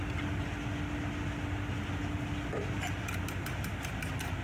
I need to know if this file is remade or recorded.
recorded